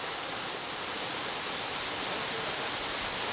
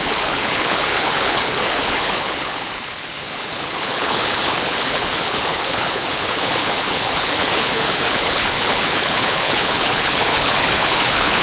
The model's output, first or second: second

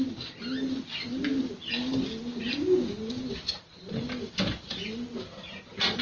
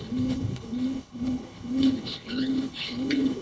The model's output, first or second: second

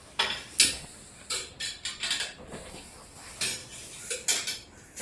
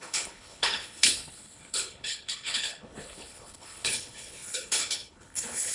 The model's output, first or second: second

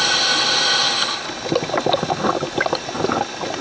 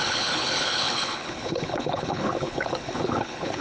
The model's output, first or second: second